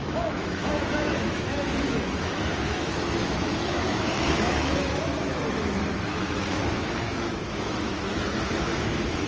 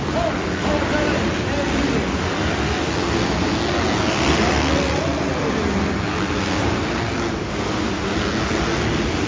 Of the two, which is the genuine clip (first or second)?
second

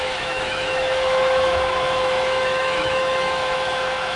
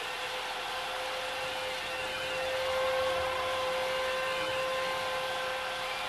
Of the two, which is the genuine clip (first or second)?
second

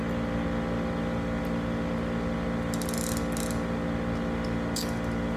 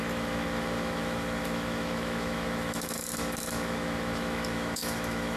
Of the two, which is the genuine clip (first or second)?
first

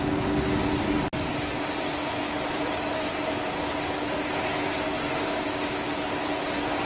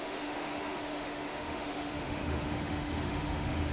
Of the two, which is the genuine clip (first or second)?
first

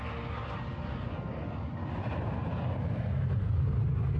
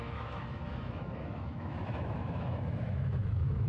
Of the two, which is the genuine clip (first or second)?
first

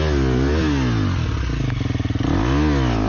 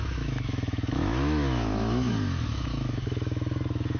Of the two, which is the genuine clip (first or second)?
first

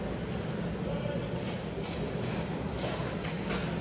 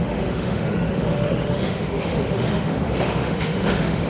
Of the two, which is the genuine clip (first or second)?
first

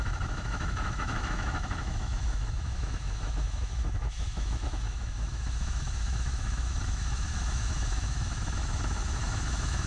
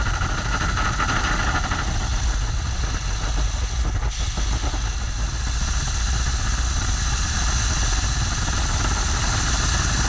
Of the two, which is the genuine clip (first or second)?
second